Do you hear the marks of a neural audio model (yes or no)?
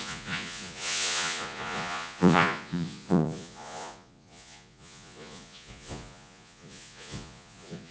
yes